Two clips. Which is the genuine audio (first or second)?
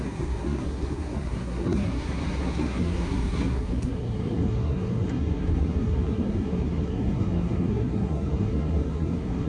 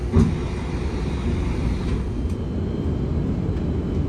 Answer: second